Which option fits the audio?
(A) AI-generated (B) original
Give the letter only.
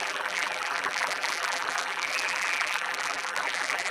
A